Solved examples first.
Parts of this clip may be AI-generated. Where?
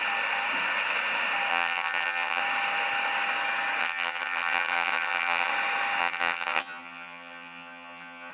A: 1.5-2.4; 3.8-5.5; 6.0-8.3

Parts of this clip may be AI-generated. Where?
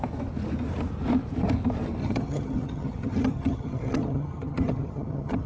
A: 2.0-5.5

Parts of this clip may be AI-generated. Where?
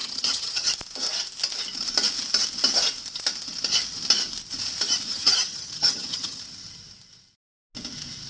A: 0.0-0.7; 5.1-6.4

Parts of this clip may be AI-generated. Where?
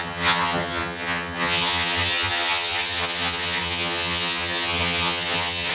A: 0.0-5.7